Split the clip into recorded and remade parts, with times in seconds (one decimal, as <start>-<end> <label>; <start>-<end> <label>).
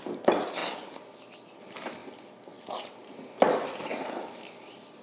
0.0-5.0 recorded